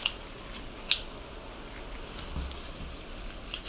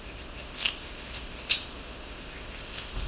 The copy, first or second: second